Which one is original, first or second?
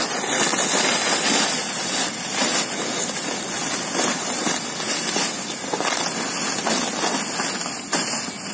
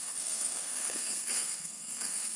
first